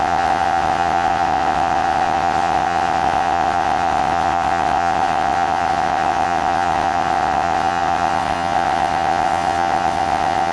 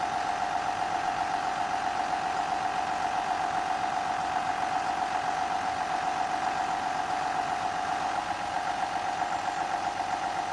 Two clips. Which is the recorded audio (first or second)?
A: second